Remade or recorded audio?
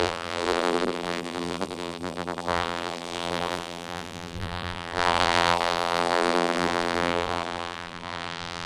remade